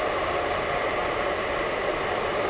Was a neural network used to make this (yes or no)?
no